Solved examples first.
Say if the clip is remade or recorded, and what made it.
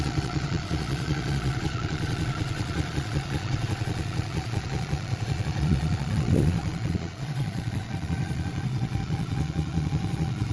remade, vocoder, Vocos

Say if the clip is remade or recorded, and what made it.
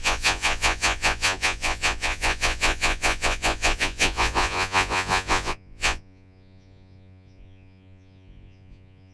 remade, vocoder, Vocos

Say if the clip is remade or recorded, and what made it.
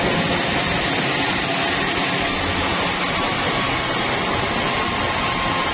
recorded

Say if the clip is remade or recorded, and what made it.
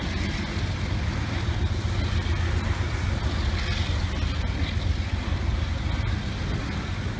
recorded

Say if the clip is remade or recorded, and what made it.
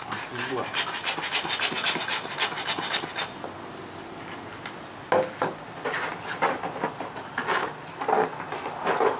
recorded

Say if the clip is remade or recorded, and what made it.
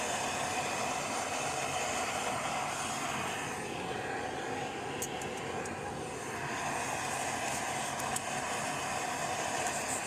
recorded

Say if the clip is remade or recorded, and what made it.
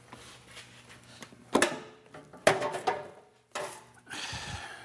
recorded